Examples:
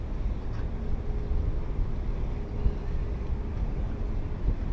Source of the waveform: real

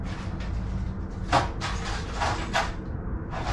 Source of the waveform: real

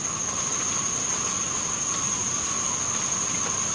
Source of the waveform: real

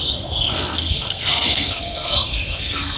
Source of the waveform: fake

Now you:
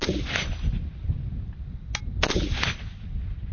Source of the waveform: real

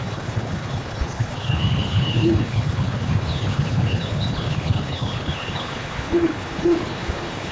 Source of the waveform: fake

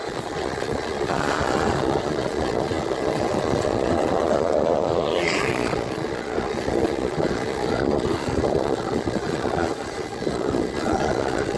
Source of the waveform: fake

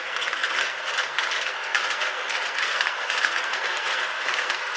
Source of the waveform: fake